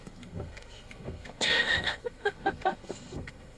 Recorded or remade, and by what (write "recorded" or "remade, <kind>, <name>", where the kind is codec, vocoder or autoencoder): remade, codec, SNAC